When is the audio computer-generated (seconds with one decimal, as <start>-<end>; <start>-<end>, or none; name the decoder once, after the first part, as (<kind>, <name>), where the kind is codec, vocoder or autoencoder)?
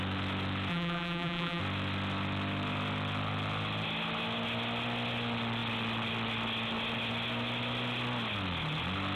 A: 0.7-1.6 (vocoder, BigVGAN v2)